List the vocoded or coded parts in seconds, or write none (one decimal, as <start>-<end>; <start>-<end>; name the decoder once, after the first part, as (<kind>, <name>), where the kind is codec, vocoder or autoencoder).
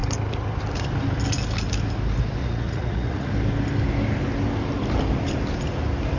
2.4-3.3 (vocoder, Vocos)